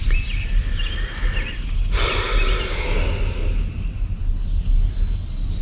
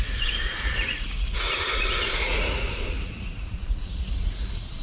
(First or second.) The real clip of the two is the first